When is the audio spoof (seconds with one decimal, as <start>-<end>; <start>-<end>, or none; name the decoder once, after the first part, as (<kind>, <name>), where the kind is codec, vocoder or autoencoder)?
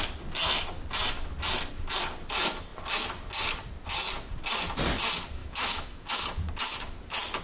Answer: 5.4-6.2 (autoencoder, DAC-VAE)